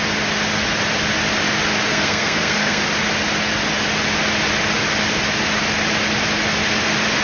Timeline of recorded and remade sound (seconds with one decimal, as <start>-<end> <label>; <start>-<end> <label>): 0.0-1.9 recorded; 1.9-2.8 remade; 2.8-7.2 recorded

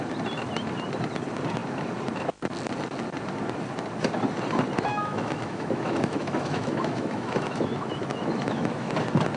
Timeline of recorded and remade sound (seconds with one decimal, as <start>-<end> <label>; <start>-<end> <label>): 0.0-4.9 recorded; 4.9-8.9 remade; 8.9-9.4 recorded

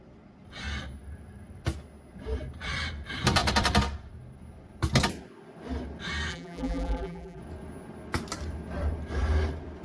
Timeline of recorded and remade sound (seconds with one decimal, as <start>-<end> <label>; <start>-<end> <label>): 0.0-6.3 recorded; 6.3-7.4 remade; 7.4-9.8 recorded